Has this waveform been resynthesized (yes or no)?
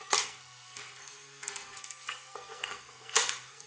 yes